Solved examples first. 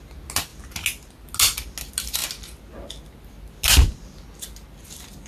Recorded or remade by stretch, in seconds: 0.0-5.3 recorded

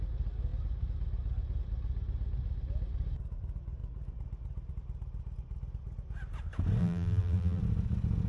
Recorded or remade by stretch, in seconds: 0.0-6.8 recorded; 6.8-7.6 remade; 7.6-8.3 recorded

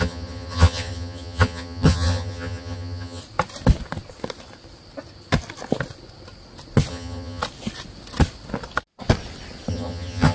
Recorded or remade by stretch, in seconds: 0.0-3.2 remade; 3.2-6.9 recorded; 6.9-7.4 remade; 7.4-9.7 recorded; 9.7-10.3 remade

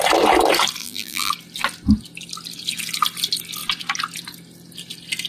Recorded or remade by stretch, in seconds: 0.0-0.8 recorded; 0.8-1.3 remade; 1.3-5.3 recorded

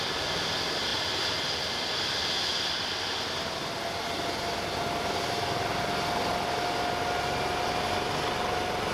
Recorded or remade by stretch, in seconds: 0.0-8.9 recorded

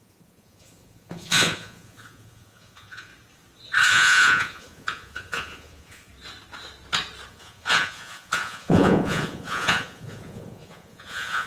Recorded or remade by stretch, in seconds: 0.0-3.1 remade; 3.1-3.9 recorded; 3.9-6.1 remade; 6.1-7.3 recorded; 7.3-11.5 remade

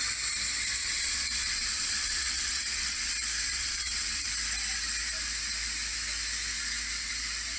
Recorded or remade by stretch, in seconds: 0.0-0.6 recorded; 0.6-3.1 remade; 3.1-3.5 recorded; 3.5-4.3 remade; 4.3-7.6 recorded

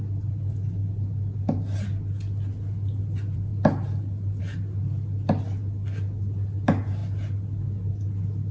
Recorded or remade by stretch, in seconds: 0.0-8.5 recorded